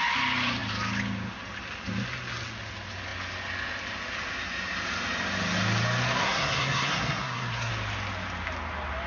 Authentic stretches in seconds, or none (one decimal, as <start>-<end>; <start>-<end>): 0.0-6.2; 7.7-9.1